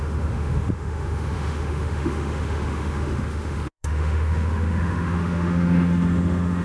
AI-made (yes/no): yes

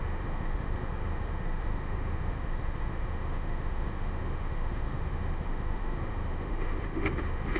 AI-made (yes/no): yes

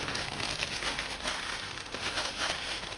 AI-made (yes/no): yes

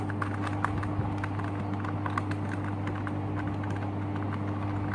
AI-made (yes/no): no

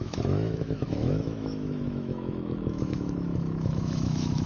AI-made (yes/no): yes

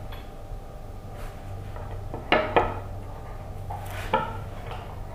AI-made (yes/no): no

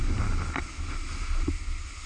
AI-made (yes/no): no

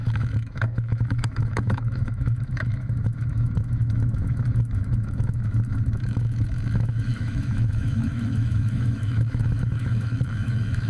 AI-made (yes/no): yes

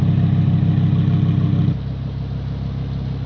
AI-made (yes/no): no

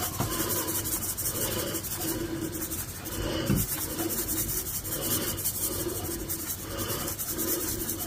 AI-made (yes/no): no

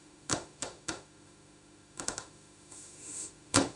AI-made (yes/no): yes